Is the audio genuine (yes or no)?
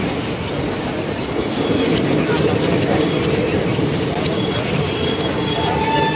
yes